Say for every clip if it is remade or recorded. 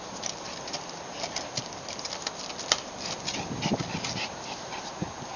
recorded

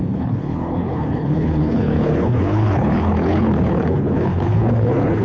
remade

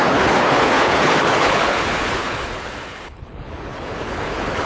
remade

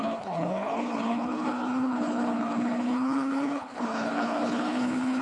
remade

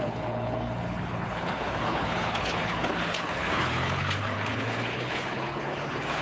remade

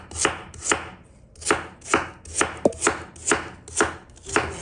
recorded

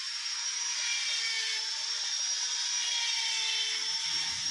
recorded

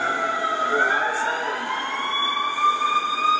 recorded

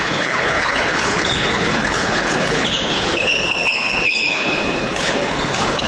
remade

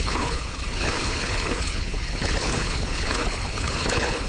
remade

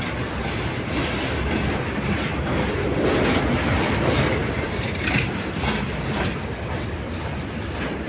recorded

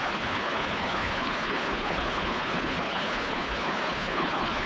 remade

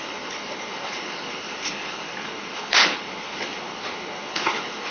remade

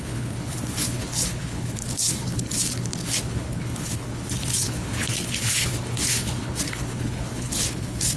remade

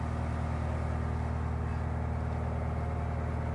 recorded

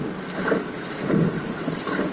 recorded